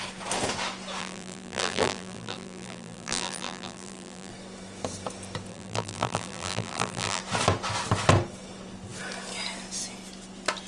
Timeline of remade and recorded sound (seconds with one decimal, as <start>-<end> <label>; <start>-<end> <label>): 0.0-1.0 recorded; 1.0-4.3 remade; 4.3-5.5 recorded; 5.5-7.2 remade; 7.2-10.7 recorded

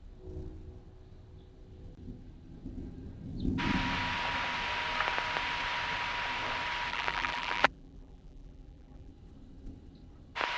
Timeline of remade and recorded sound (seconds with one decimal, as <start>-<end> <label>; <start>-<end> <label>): 0.0-6.9 recorded; 6.9-9.1 remade; 9.1-10.6 recorded

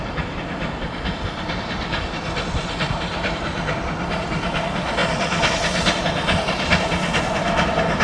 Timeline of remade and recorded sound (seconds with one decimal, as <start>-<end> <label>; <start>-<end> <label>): 0.0-8.0 remade